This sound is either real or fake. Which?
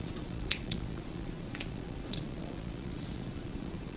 fake